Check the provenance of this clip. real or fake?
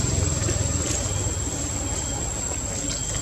real